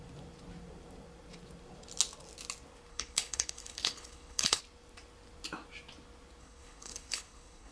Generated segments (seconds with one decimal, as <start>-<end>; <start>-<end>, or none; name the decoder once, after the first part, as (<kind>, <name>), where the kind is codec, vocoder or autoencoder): 2.9-4.6 (codec, HILCodec); 6.4-7.7